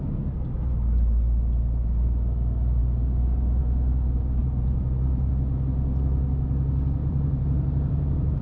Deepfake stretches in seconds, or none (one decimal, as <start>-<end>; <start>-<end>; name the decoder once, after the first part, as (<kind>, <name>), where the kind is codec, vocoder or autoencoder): 4.4-5.3 (vocoder, BigVGAN v2); 7.0-8.4